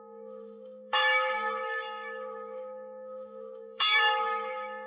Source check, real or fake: fake